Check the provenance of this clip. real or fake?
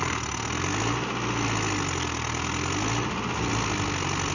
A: real